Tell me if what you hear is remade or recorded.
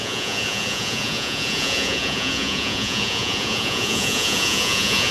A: remade